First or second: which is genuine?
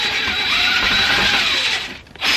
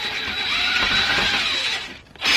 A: second